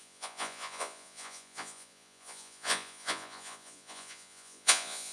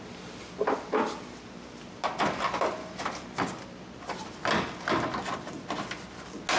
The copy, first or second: first